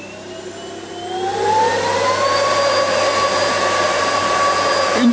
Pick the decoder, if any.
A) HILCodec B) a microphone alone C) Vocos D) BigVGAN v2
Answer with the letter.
B